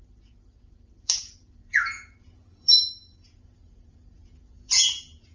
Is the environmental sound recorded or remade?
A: remade